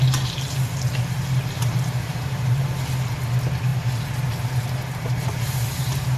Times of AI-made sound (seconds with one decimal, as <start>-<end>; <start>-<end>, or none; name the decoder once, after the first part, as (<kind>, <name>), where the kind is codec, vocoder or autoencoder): 0.0-3.7 (vocoder, BigVGAN v2); 4.6-6.2